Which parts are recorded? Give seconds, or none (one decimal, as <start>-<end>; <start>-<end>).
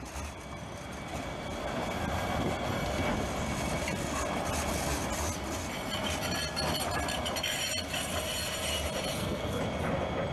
0.0-9.1; 9.6-10.3